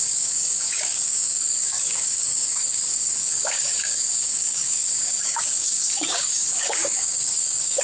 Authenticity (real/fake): fake